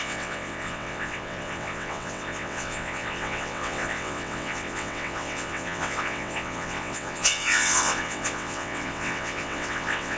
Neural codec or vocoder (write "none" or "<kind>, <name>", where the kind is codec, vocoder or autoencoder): vocoder, WaveNeXt